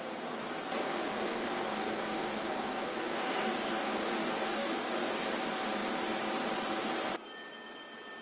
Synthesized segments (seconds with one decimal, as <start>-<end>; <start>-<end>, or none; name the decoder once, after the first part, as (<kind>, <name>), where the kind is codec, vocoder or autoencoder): 0.9-5.3 (codec, DAC)